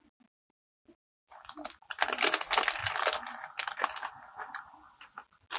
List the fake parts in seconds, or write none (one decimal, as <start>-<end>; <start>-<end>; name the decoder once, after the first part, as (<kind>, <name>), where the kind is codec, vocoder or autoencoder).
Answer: none

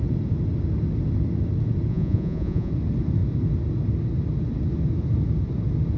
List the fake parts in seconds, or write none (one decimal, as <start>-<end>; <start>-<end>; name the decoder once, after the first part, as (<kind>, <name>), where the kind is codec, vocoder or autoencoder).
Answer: 1.9-2.7 (vocoder, Vocos)